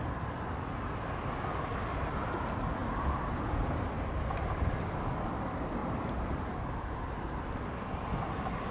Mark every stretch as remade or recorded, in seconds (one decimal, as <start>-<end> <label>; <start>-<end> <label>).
0.0-5.8 recorded; 5.8-7.0 remade; 7.0-8.7 recorded